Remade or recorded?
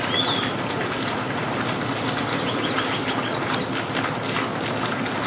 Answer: recorded